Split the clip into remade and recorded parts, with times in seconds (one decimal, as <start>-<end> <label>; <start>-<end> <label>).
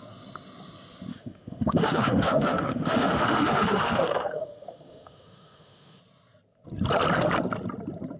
0.0-1.1 recorded; 1.1-6.0 remade; 6.0-8.2 recorded